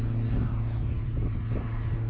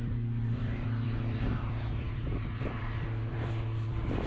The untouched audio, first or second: first